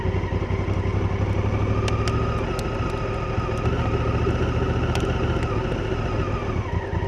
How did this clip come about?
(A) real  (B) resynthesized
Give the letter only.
A